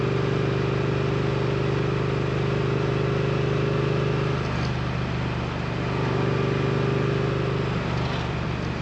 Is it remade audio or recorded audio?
recorded